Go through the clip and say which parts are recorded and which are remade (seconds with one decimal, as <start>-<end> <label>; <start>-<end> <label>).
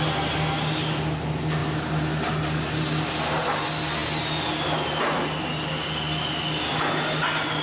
0.0-7.6 recorded